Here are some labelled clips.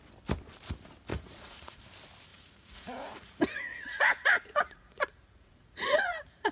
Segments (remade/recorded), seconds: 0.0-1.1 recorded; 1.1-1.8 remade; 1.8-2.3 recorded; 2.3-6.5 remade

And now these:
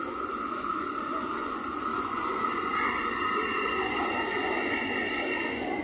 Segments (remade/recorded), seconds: 0.0-5.8 remade

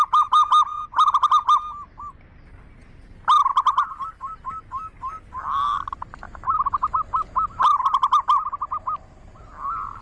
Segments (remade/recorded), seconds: 0.0-10.0 recorded

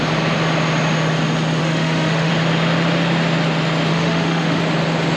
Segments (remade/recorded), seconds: 0.0-1.6 recorded; 1.6-2.3 remade; 2.3-3.9 recorded; 3.9-4.6 remade; 4.6-5.2 recorded

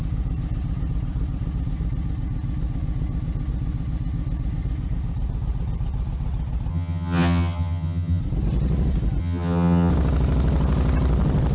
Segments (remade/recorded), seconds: 0.0-6.7 recorded; 6.7-8.2 remade; 8.2-9.2 recorded; 9.2-9.9 remade; 9.9-11.5 recorded

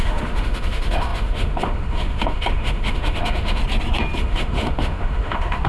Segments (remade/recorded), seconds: 0.0-3.6 remade; 3.6-4.2 recorded; 4.2-5.7 remade

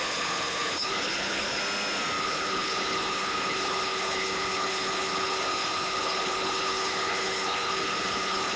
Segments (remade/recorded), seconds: 0.0-1.6 remade; 1.6-2.2 recorded; 2.2-8.6 remade

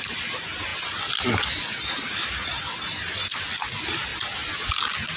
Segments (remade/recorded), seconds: 0.0-5.2 recorded